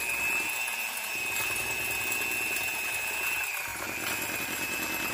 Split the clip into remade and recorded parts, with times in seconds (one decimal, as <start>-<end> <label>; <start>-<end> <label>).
0.0-5.1 recorded